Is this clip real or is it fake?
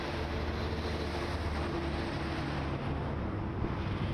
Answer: real